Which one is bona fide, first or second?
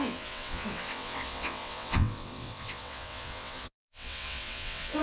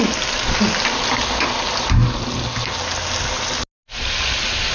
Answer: second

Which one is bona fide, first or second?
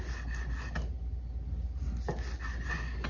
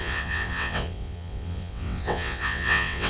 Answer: first